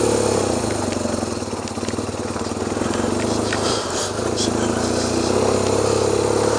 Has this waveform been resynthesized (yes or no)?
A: no